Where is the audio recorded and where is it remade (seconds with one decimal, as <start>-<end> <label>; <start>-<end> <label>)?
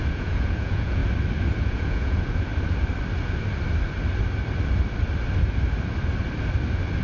0.0-1.0 remade; 1.0-1.6 recorded; 1.6-2.5 remade; 2.5-7.0 recorded